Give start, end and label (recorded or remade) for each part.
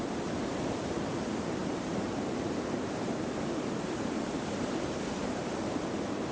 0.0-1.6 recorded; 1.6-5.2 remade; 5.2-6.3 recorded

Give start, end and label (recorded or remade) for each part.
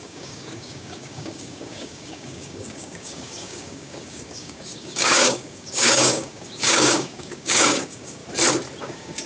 0.0-8.2 remade; 8.2-8.8 recorded; 8.8-9.3 remade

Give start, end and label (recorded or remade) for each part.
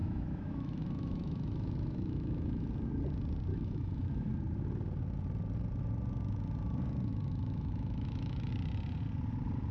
0.0-2.7 remade; 2.7-3.5 recorded; 3.5-4.3 remade; 4.3-7.1 recorded; 7.1-8.5 remade; 8.5-9.7 recorded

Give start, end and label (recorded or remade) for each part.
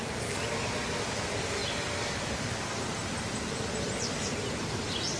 0.0-5.2 recorded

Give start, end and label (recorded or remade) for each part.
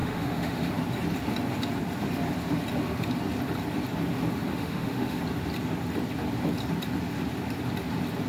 0.0-0.7 remade; 0.7-4.5 recorded; 4.5-5.2 remade; 5.2-8.3 recorded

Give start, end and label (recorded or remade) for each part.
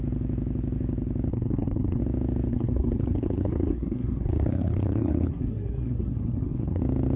0.0-1.3 recorded; 1.3-2.0 remade; 2.0-2.5 recorded; 2.5-6.8 remade; 6.8-7.2 recorded